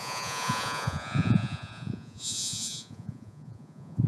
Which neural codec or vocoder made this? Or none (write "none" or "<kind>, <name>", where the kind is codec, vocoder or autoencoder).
vocoder, Vocos